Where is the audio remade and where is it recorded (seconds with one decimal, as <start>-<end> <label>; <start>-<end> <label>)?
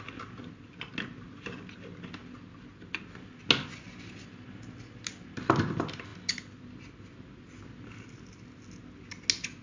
0.0-9.6 recorded